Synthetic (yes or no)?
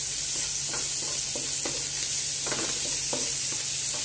no